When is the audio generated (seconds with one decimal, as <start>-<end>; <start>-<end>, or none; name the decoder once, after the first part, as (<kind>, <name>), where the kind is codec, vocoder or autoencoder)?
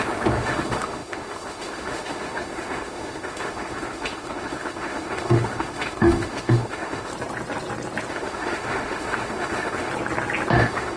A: 0.0-7.1 (autoencoder, DAC-VAE); 8.1-9.9; 10.5-11.0